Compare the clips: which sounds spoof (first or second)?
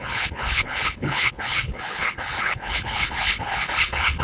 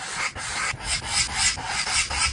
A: first